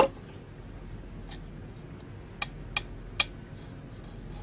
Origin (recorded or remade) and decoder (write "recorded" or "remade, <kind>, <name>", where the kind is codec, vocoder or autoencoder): recorded